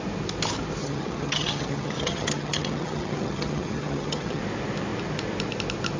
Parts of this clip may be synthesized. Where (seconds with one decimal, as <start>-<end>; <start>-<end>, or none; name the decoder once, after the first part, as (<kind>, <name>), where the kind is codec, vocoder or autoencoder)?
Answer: 0.8-4.4 (vocoder, HiFi-GAN)